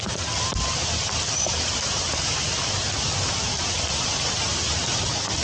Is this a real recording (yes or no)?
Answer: yes